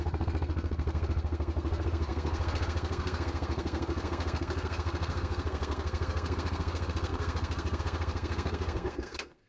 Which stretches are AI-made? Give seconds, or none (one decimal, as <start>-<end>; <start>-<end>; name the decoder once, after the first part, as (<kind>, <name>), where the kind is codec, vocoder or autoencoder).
0.0-9.5 (codec, SNAC)